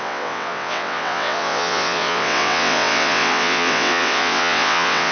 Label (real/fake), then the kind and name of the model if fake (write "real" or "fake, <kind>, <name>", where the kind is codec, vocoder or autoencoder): fake, vocoder, WaveNeXt